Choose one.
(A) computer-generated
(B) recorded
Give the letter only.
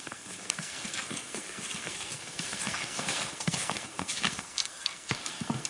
A